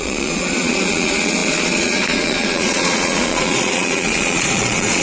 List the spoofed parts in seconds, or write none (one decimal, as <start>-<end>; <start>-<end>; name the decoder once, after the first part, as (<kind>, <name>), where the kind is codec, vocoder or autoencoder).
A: 0.0-5.0 (vocoder, Vocos)